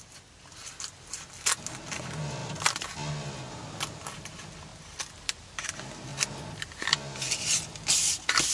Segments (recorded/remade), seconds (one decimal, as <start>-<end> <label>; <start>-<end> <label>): 0.0-8.5 recorded